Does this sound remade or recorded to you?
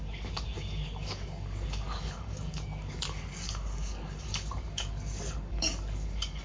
remade